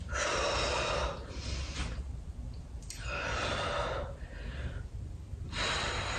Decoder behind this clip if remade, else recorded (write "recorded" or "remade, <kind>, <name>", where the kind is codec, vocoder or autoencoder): recorded